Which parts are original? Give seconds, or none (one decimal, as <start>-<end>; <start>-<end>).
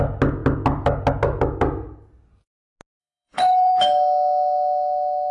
0.0-3.0; 3.7-5.3